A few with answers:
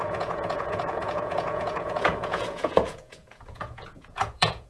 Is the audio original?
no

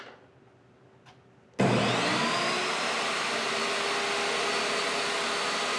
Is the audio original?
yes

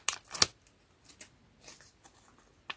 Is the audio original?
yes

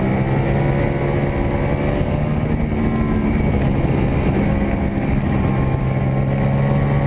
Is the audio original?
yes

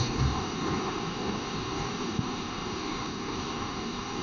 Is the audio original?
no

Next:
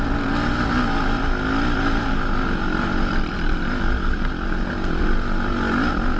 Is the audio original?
yes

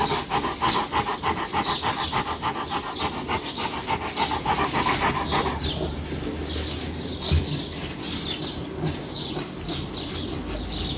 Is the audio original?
yes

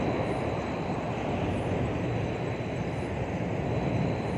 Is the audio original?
yes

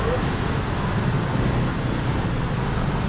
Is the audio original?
yes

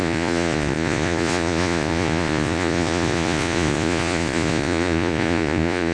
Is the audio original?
no